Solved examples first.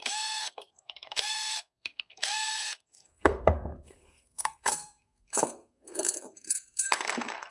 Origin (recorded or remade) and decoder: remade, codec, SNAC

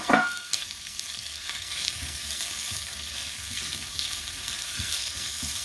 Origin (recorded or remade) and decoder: remade, codec, SNAC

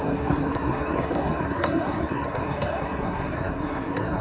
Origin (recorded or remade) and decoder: remade, codec, SNAC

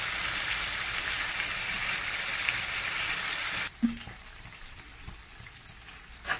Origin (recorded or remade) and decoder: recorded